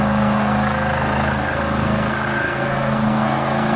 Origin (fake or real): fake